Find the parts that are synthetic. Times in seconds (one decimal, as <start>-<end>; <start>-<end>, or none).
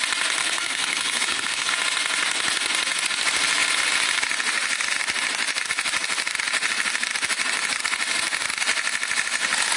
0.4-1.7